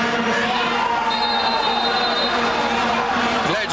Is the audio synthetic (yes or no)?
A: no